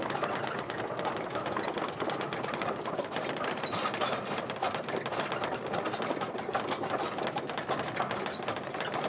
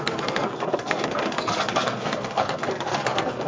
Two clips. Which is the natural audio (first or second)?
first